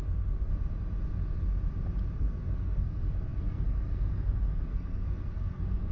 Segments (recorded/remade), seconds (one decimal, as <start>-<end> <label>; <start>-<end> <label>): 0.0-0.5 remade; 0.5-2.2 recorded; 2.2-5.9 remade